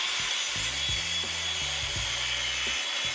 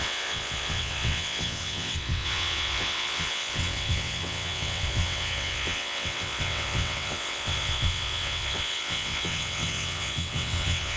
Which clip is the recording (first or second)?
first